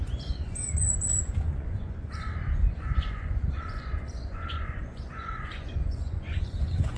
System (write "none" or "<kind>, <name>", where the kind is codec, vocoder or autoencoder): vocoder, Vocos